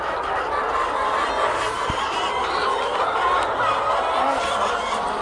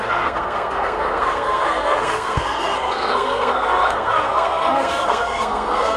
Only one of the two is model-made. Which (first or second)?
second